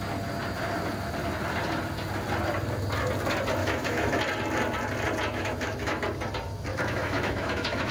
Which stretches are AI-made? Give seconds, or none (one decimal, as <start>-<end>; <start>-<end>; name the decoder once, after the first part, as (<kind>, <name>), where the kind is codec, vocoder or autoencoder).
3.6-4.2 (autoencoder, DAC-VAE); 5.3-6.0; 6.7-7.9